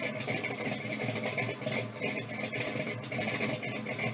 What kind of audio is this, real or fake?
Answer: real